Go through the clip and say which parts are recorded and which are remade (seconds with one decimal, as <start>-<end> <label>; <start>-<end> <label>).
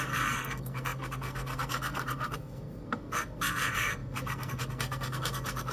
0.0-5.7 remade